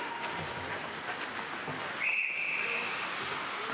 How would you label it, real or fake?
real